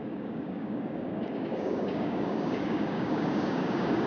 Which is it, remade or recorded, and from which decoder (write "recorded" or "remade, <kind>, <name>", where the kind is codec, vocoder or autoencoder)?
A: remade, codec, DAC